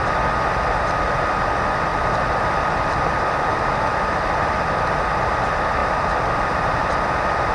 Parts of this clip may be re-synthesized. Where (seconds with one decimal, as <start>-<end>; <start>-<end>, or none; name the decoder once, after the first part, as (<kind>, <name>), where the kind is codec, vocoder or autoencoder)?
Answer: 1.9-3.8 (vocoder, BigVGAN v2); 5.8-7.1